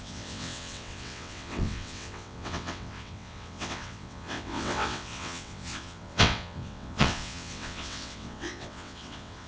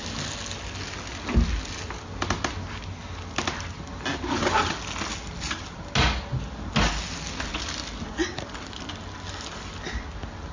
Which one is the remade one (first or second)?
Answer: first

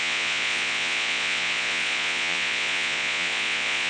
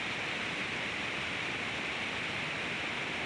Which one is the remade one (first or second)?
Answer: first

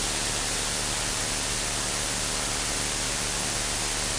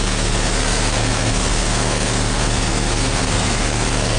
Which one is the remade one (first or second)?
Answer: second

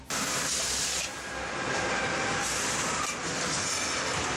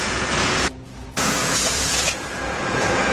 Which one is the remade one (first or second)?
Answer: second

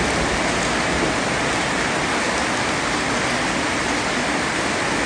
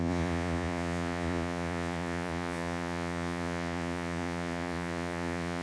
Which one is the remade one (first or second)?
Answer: second